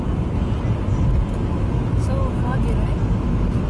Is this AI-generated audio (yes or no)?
no